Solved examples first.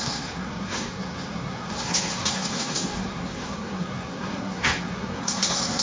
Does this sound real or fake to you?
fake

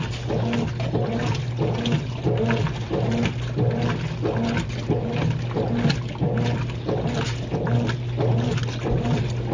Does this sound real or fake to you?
real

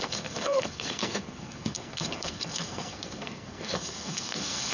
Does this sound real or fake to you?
fake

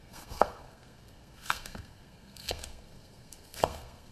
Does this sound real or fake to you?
fake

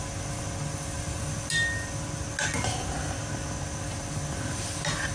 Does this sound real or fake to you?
real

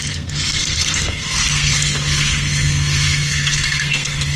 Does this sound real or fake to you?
fake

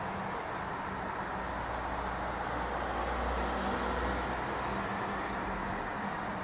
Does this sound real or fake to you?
real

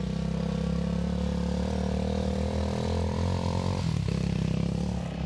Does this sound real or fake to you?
real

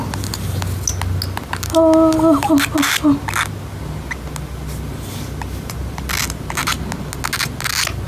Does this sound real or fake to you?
real